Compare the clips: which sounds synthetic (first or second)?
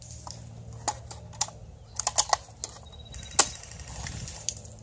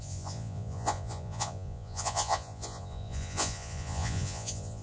second